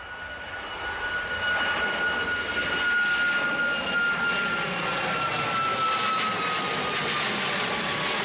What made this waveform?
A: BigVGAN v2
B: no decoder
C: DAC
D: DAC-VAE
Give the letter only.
B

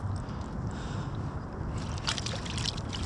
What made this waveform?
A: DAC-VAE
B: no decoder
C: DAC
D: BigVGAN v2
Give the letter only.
D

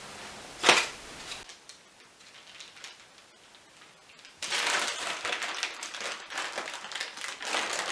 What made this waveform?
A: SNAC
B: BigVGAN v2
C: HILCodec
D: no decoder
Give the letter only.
D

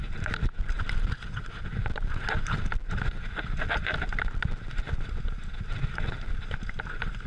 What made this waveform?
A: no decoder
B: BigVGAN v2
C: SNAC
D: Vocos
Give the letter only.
A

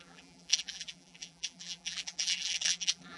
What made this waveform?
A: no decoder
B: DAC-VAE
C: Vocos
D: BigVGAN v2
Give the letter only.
D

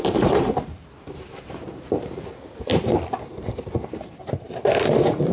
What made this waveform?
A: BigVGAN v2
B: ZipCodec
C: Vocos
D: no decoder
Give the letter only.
A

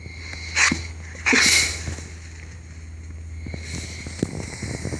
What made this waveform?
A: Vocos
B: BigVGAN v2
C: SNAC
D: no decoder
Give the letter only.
D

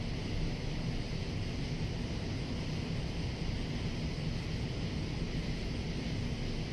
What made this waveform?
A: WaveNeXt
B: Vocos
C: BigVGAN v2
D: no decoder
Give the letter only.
D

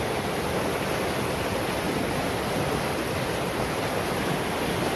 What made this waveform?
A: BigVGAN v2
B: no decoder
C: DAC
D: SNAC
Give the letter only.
B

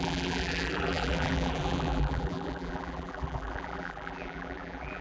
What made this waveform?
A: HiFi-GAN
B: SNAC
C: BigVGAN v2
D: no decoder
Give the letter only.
C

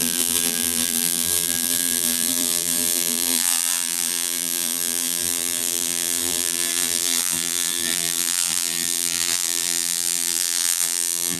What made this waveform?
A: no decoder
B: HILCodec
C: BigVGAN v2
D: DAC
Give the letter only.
C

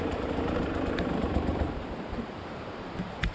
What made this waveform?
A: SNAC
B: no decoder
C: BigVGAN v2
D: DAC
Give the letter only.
C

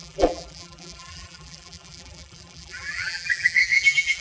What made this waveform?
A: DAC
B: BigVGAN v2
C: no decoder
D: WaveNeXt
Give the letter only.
B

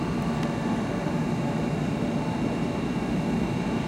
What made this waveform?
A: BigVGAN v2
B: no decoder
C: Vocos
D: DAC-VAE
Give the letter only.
A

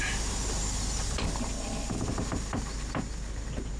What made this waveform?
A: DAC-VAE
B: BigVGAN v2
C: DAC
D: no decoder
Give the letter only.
D